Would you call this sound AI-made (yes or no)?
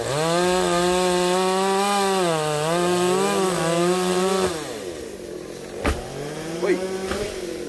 no